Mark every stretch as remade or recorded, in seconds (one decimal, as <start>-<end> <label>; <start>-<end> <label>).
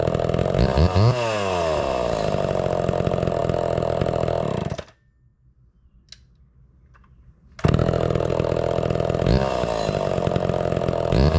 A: 0.0-11.4 recorded